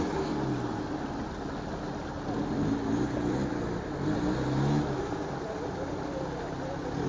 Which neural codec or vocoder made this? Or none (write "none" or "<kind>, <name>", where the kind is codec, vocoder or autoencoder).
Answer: none